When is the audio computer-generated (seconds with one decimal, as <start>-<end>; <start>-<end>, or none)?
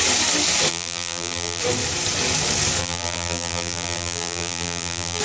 0.7-1.6; 2.8-5.2